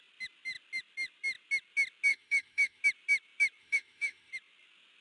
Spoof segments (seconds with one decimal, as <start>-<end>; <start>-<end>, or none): 2.1-2.8; 3.6-4.3